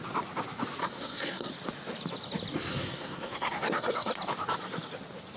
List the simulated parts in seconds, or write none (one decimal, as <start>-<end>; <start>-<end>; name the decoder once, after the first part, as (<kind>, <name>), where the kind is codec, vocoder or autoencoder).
0.8-1.5 (codec, SNAC); 2.7-4.1